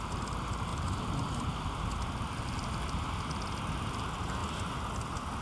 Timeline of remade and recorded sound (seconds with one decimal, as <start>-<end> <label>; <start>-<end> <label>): 0.0-5.4 recorded